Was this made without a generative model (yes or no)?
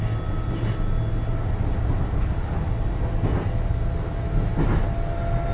yes